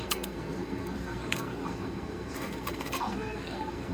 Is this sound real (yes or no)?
no